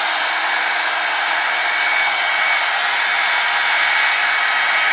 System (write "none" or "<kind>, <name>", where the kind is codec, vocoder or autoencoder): none